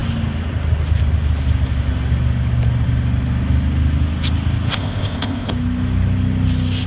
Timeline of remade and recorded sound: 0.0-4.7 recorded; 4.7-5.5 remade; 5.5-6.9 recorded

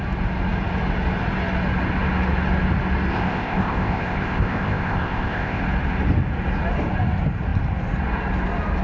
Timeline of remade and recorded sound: 0.0-3.1 recorded; 3.1-5.6 remade; 5.6-8.8 recorded

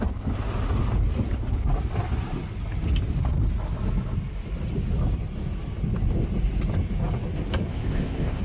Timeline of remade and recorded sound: 0.0-7.7 recorded; 7.7-8.4 remade

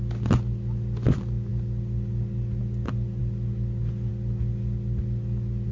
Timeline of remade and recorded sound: 0.0-5.7 recorded